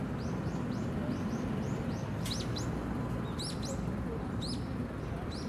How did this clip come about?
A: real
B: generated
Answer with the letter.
A